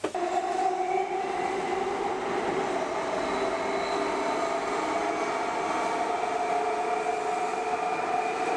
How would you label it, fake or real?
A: real